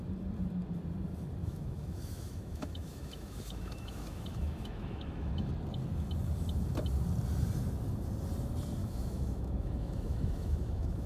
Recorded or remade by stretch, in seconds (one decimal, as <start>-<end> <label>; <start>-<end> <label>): 0.0-1.4 recorded; 1.4-5.5 remade; 5.5-8.8 recorded; 8.8-11.1 remade